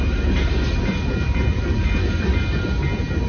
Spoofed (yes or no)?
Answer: no